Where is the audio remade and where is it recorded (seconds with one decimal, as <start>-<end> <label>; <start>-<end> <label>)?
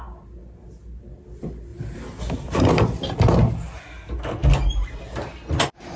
0.0-6.0 recorded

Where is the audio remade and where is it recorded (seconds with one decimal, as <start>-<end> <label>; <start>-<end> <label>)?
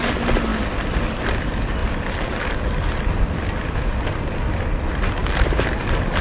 0.0-6.2 recorded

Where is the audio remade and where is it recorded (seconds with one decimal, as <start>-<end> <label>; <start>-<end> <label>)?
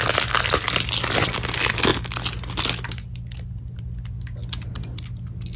0.0-5.6 recorded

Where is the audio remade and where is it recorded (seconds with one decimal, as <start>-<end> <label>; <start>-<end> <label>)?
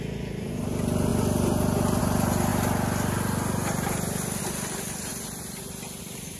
0.0-6.4 recorded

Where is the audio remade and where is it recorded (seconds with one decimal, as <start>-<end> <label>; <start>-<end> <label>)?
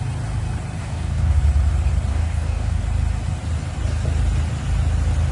0.0-0.8 recorded; 0.8-1.4 remade; 1.4-2.1 recorded; 2.1-2.8 remade; 2.8-5.3 recorded